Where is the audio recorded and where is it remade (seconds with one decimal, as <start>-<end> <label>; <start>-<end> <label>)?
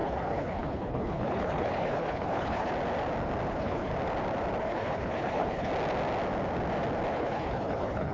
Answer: 0.0-2.7 remade; 2.7-3.5 recorded; 3.5-3.9 remade; 3.9-4.6 recorded; 4.6-5.7 remade; 5.7-7.1 recorded; 7.1-8.1 remade